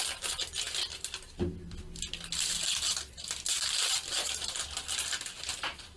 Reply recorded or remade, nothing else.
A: recorded